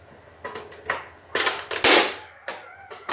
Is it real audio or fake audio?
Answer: real